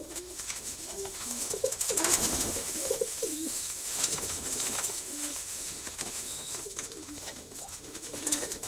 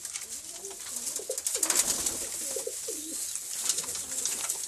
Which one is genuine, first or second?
second